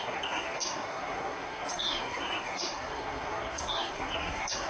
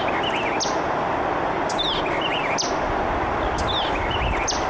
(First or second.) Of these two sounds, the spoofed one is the first